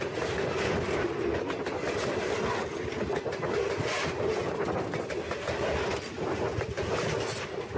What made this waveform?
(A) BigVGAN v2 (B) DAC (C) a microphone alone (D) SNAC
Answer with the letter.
C